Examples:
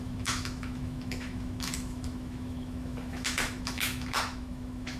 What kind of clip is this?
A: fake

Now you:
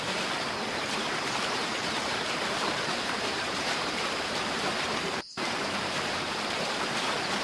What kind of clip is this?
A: fake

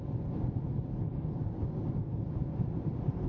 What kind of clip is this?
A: real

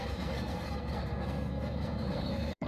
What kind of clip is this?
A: fake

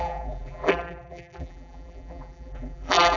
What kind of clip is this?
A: fake